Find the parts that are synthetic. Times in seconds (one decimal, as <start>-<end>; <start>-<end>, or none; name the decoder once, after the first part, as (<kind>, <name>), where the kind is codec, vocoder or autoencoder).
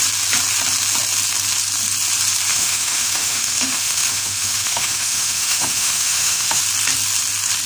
2.5-6.6 (autoencoder, DAC-VAE)